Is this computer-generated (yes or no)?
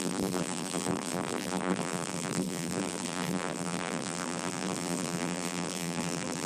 yes